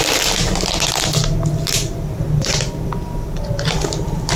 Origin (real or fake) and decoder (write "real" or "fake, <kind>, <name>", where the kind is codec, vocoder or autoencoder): real